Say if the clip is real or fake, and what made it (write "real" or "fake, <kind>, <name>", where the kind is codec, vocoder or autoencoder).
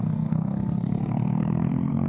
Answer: fake, codec, SNAC